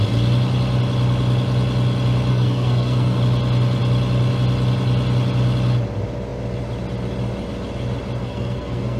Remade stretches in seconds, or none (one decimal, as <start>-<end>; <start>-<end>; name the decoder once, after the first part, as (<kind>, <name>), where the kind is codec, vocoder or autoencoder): 2.3-3.2 (codec, SNAC); 8.2-9.0